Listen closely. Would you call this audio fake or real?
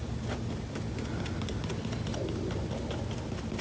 real